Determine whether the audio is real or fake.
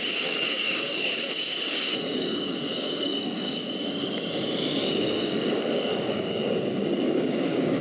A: fake